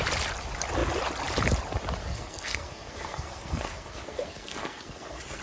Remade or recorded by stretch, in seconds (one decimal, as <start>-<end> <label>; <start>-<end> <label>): 0.0-2.0 recorded; 2.0-5.4 remade